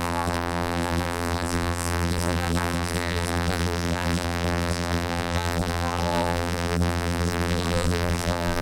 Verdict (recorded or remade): remade